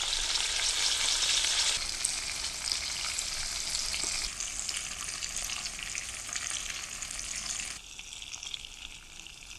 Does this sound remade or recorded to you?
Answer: recorded